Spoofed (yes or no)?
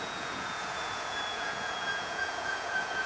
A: yes